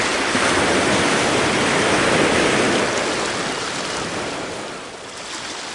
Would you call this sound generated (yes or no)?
no